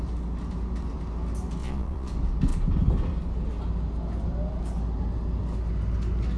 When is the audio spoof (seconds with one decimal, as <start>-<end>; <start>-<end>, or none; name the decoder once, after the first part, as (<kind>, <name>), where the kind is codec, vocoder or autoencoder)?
1.6-2.1 (vocoder, Vocos)